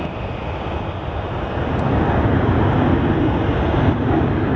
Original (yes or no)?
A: yes